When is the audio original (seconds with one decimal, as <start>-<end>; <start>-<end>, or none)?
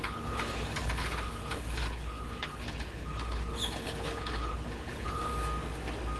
5.3-6.2